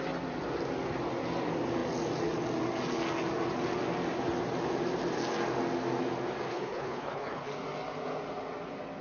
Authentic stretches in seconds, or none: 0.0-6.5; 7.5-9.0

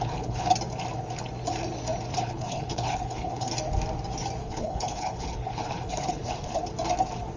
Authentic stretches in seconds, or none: 0.5-2.1; 3.5-4.4; 6.6-7.4

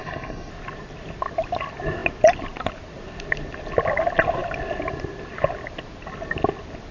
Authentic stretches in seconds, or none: 0.5-6.9

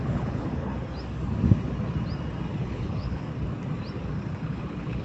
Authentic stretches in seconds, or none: 0.7-2.6; 3.3-4.4

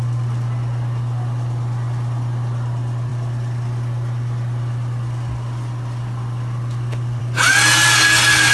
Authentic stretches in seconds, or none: 0.0-8.5

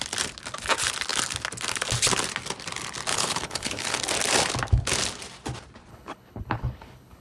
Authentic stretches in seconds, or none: 0.0-3.1; 4.0-5.9